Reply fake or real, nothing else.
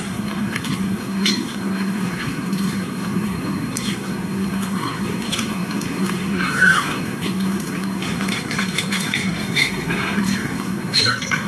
fake